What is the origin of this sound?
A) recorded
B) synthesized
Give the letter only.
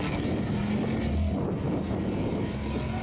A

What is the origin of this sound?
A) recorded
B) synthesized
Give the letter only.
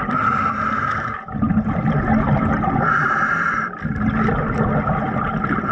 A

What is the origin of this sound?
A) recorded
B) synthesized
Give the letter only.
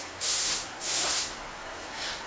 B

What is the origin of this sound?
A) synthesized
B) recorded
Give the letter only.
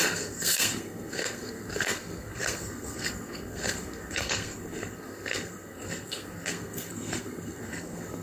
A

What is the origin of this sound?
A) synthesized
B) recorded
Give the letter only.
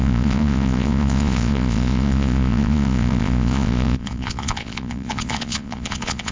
A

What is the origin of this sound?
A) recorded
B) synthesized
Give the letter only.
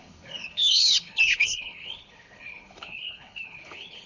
B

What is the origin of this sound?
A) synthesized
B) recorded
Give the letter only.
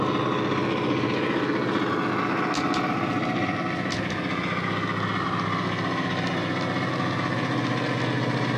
B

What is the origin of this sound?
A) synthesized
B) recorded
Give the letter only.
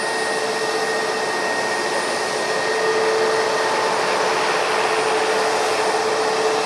B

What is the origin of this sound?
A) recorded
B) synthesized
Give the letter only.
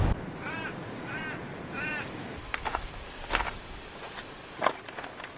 A